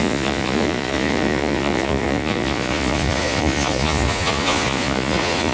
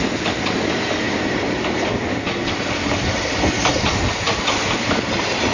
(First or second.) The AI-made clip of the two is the first